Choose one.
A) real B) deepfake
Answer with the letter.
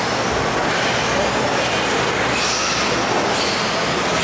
A